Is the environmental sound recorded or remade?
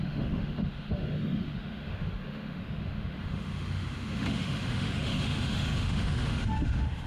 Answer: remade